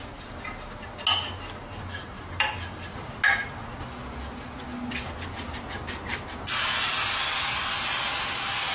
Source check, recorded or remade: recorded